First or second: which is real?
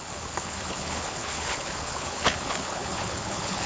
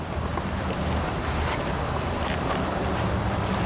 second